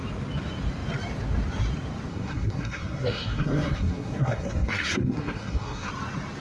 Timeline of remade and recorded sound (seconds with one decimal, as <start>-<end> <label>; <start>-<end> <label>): 0.0-2.1 recorded; 2.1-5.9 remade; 5.9-6.4 recorded

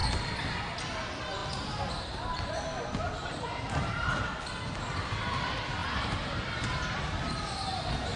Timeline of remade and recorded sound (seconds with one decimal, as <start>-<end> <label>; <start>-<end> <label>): 0.0-3.2 recorded; 3.2-4.2 remade; 4.2-5.8 recorded; 5.8-7.0 remade; 7.0-8.2 recorded

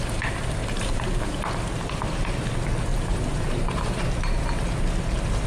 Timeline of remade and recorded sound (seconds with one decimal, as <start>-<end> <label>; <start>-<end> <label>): 0.0-0.6 recorded; 0.6-1.4 remade; 1.4-2.9 recorded; 2.9-4.2 remade; 4.2-5.5 recorded

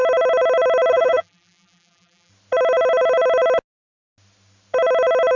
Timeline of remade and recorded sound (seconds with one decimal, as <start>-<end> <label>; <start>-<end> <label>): 0.0-0.9 recorded; 0.9-2.3 remade; 2.3-5.4 recorded

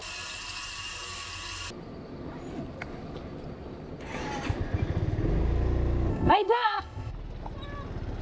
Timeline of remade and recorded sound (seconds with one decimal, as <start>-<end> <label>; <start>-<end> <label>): 0.0-6.1 recorded; 6.1-7.1 remade; 7.1-8.2 recorded